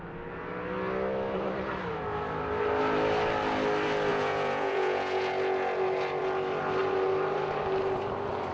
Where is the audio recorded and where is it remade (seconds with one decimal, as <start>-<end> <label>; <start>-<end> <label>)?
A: 0.0-4.1 recorded; 4.1-5.3 remade; 5.3-8.5 recorded